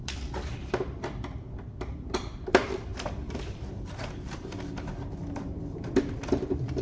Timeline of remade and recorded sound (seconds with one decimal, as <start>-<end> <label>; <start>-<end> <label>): 0.0-6.8 remade